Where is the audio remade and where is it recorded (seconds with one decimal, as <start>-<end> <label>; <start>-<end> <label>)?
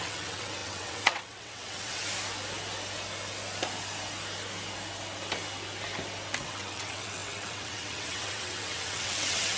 0.0-2.0 remade; 2.0-6.4 recorded; 6.4-9.6 remade